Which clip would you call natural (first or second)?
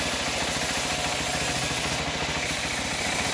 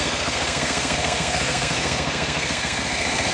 first